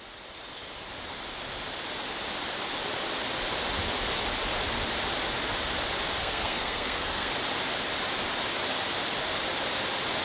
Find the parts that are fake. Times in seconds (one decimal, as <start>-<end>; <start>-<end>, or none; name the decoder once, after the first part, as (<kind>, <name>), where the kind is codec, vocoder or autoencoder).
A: 6.2-7.3 (codec, SNAC)

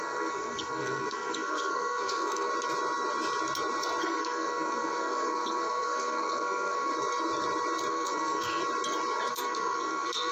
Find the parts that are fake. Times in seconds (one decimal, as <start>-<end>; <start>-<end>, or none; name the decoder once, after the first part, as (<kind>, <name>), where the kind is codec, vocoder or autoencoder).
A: 0.0-2.5 (codec, SNAC); 4.0-6.9; 7.9-8.6; 9.3-10.3

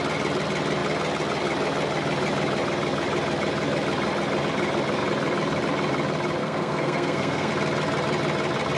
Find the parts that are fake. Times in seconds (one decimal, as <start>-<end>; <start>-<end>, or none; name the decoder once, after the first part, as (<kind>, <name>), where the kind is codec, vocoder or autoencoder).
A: 6.4-7.5 (codec, SNAC)

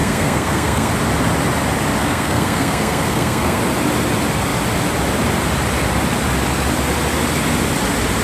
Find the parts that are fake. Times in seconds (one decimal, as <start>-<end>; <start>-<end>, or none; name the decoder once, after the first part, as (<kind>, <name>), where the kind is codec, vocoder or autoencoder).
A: 0.0-0.9 (codec, SNAC); 2.0-3.6

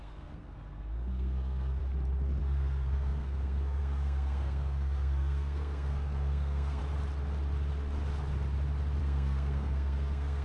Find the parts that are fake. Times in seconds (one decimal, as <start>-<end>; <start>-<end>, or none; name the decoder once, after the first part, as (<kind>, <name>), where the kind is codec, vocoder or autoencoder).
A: 0.0-1.8 (codec, SNAC); 2.4-6.8; 9.0-10.4

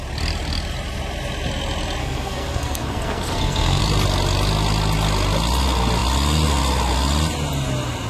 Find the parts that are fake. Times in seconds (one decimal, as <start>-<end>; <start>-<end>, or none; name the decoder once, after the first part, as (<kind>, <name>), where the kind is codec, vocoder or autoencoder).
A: 2.0-3.8 (codec, SNAC)